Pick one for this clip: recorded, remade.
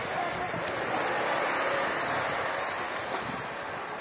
remade